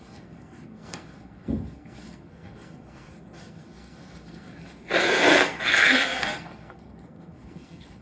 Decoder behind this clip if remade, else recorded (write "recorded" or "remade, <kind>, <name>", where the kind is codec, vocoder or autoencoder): remade, codec, SNAC